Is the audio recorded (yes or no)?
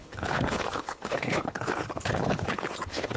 no